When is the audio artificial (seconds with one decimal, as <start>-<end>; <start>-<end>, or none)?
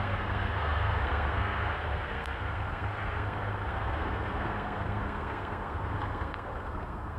0.0-7.2